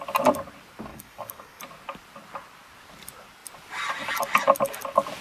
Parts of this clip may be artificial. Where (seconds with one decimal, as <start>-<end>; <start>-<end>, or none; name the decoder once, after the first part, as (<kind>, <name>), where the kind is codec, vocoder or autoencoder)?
0.9-1.6 (codec, DAC)